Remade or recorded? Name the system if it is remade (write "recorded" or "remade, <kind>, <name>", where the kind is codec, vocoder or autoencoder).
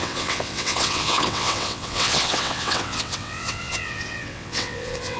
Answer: remade, vocoder, WaveNeXt